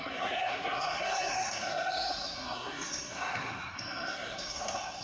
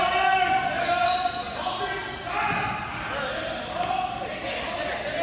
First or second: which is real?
second